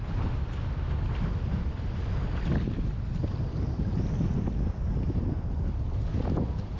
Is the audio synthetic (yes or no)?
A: no